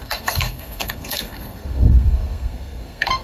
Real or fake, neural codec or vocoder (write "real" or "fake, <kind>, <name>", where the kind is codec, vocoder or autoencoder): fake, codec, SNAC